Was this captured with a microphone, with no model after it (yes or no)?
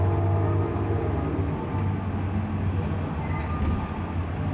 yes